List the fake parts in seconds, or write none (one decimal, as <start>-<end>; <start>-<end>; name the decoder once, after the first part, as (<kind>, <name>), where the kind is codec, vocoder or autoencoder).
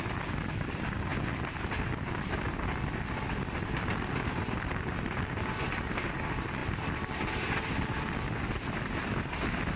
none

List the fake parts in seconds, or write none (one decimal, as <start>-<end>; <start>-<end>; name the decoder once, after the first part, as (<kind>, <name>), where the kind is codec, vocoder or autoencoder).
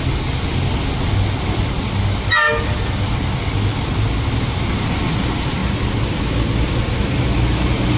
none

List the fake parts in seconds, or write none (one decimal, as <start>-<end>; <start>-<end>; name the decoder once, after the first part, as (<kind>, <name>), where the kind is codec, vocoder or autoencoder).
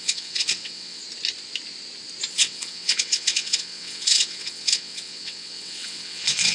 0.0-1.0 (vocoder, WaveNeXt); 2.3-6.5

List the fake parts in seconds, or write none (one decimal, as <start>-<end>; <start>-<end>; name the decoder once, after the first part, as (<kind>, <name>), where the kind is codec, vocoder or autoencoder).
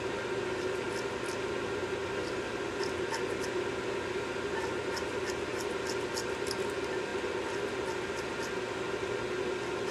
none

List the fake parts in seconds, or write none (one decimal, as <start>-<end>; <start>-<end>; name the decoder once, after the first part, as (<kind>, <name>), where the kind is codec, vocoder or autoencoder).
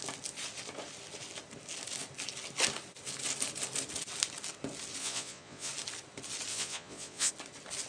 5.0-5.7 (vocoder, Vocos); 6.5-7.3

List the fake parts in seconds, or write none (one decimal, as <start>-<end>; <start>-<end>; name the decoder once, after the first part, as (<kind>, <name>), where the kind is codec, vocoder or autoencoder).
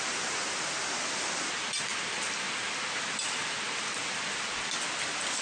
none